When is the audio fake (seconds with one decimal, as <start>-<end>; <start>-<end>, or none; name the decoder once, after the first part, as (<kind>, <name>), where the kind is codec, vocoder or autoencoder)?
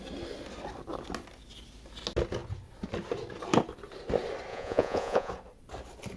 4.5-5.3 (vocoder, Vocos)